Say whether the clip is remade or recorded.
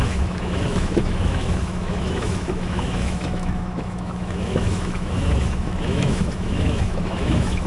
remade